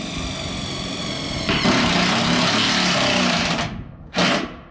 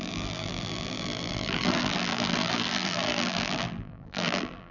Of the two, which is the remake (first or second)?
second